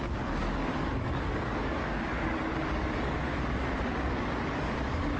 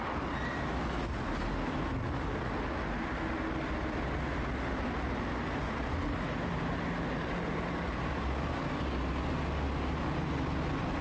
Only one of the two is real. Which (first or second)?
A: second